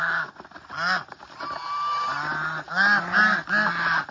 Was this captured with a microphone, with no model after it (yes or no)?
yes